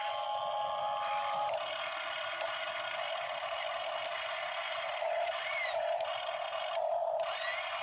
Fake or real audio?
real